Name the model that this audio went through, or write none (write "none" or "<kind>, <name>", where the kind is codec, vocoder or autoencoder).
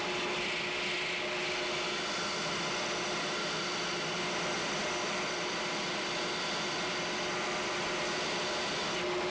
none